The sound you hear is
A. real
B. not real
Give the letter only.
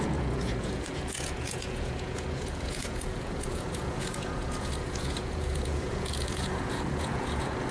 B